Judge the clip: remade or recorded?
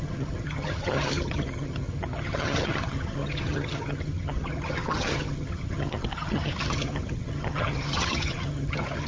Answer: remade